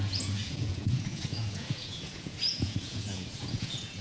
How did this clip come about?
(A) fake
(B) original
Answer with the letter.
A